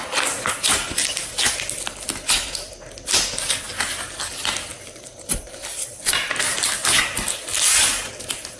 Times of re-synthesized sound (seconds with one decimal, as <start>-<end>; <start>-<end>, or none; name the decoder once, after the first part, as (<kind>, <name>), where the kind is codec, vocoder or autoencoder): 4.7-6.0 (vocoder, BigVGAN v2)